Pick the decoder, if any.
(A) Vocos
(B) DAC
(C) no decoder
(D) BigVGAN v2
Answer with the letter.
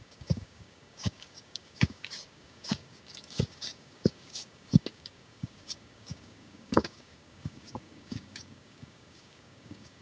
B